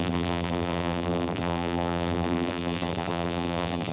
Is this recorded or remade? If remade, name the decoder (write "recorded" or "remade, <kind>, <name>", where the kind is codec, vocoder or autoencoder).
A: remade, vocoder, BigVGAN v2